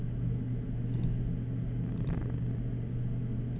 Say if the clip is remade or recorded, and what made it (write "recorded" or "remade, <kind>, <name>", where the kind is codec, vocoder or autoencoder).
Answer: recorded